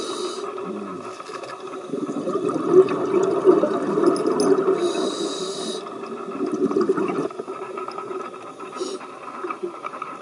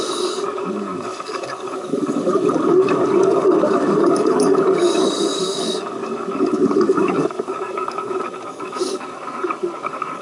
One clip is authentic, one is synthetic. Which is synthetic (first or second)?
second